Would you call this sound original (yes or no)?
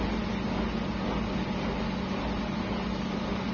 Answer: yes